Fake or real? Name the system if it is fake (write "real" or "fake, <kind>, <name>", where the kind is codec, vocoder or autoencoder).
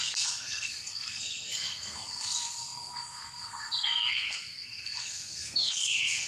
fake, codec, SNAC